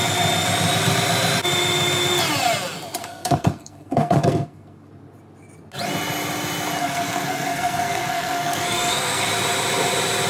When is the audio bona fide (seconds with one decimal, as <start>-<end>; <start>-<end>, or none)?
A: 0.0-3.0; 4.9-6.8; 9.3-10.3